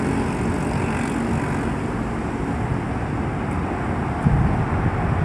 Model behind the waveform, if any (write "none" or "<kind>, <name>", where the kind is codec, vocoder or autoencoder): none